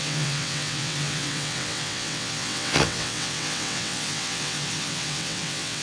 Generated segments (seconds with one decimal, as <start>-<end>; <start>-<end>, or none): 0.0-5.8